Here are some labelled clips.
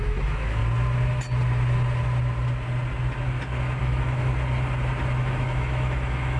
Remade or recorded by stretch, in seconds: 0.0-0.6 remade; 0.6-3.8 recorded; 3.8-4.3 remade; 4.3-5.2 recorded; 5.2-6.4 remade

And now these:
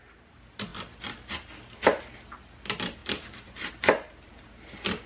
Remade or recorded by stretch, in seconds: 0.0-5.1 recorded